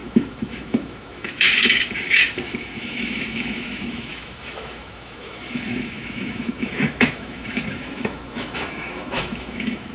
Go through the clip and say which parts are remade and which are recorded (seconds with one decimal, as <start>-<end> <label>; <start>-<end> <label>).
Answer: 0.0-9.9 remade